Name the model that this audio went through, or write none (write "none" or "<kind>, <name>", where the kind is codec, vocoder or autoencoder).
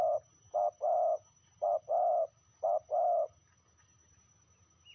none